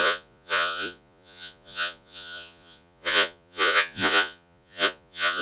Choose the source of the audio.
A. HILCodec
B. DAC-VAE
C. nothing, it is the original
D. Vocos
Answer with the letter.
D